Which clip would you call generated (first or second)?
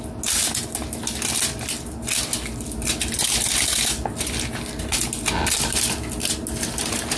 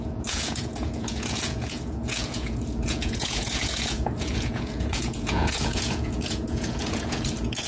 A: second